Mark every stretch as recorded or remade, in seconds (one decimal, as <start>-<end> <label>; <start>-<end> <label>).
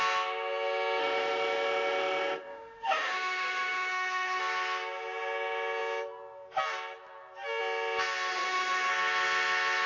0.0-1.0 recorded; 1.0-4.4 remade; 4.4-8.3 recorded; 8.3-8.9 remade; 8.9-9.9 recorded